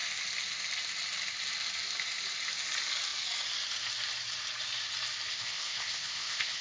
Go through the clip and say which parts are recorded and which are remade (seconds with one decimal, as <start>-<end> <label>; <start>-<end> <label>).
0.0-5.3 recorded; 5.3-6.6 remade